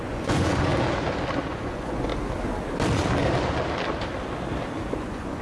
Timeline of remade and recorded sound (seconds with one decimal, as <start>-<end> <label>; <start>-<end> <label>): 0.0-0.7 remade; 0.7-1.5 recorded; 1.5-2.1 remade; 2.1-4.9 recorded; 4.9-5.4 remade